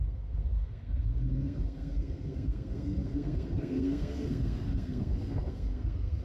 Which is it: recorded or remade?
remade